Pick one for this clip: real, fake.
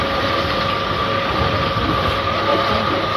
real